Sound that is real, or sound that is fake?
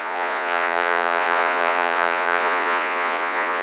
fake